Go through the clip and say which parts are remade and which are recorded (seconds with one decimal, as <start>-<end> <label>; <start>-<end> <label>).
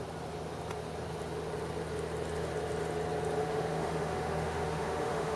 0.0-3.4 recorded; 3.4-5.4 remade